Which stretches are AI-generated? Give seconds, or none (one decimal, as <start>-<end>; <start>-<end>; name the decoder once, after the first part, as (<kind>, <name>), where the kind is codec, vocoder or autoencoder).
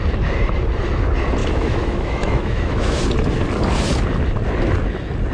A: 1.4-3.0 (autoencoder, DAC-VAE)